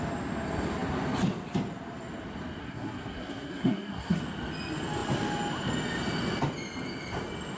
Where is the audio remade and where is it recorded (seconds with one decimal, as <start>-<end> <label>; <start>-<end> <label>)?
0.0-2.6 recorded; 2.6-4.2 remade; 4.2-7.6 recorded